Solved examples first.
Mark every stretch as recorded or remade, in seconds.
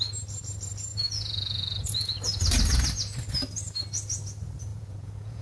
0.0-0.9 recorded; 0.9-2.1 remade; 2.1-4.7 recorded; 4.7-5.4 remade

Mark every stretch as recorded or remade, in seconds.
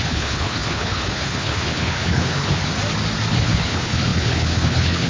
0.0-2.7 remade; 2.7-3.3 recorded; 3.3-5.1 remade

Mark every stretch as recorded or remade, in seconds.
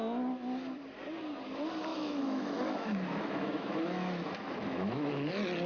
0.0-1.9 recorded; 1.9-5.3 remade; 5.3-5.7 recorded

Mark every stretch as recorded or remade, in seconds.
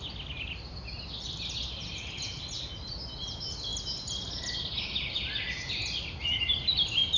0.0-7.2 recorded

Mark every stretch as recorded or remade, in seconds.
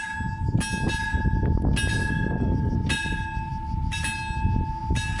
0.0-2.0 recorded; 2.0-2.7 remade; 2.7-5.2 recorded